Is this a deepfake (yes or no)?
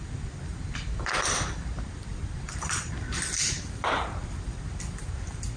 yes